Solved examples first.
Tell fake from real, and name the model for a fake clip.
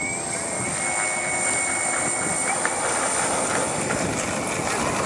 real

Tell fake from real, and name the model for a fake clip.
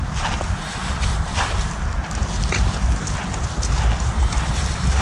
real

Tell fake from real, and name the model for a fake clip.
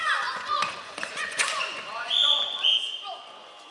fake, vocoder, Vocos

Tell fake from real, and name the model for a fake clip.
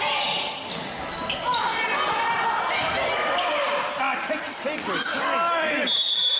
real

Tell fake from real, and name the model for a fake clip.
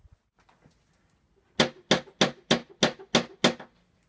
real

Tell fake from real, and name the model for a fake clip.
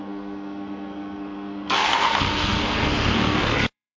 fake, codec, SNAC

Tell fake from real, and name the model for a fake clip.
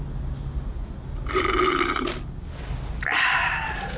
real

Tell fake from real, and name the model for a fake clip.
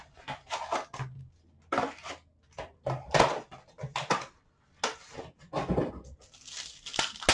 real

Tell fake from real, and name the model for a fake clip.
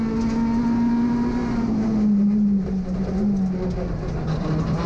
real